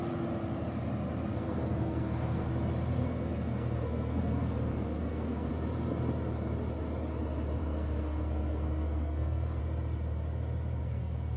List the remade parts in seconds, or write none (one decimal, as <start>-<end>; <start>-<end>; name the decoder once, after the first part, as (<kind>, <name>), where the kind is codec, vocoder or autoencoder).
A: 1.3-2.5 (codec, SNAC); 3.0-5.5; 7.6-9.6; 10.8-11.4